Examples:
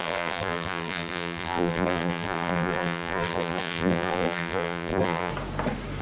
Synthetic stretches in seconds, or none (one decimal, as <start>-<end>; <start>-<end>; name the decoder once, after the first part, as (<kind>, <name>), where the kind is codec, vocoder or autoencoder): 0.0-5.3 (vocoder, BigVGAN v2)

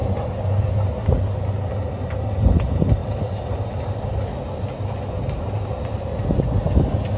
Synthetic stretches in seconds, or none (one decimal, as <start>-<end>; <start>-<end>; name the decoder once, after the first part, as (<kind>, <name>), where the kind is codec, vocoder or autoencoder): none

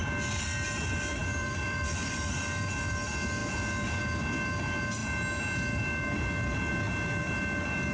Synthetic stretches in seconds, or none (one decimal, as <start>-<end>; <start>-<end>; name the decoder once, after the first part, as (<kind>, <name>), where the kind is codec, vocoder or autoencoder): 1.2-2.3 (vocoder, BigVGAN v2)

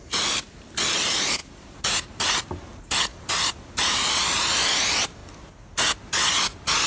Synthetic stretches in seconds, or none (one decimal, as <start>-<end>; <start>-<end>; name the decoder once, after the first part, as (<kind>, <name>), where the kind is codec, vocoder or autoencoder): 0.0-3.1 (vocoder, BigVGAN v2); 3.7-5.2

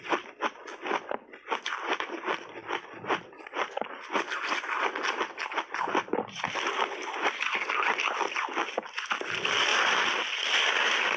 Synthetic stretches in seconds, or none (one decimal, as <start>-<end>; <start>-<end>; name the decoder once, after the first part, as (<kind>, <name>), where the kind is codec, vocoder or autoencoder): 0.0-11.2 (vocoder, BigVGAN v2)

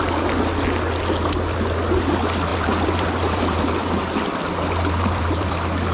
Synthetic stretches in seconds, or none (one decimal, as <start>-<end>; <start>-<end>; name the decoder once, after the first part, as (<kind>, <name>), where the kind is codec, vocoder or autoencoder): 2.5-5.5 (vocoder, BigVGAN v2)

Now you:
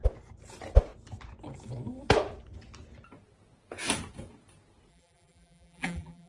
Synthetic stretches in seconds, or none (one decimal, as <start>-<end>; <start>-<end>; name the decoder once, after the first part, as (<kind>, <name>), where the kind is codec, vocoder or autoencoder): 4.9-6.3 (vocoder, BigVGAN v2)